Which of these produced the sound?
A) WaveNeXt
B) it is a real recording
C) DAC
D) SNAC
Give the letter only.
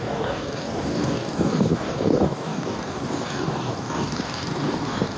C